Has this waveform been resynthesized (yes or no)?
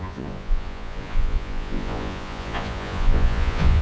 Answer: yes